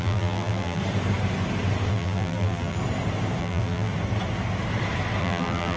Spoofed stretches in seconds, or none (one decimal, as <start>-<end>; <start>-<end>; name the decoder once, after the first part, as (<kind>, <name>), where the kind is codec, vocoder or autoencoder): 0.0-0.8 (vocoder, BigVGAN v2); 1.9-2.8; 3.4-3.9; 5.2-5.8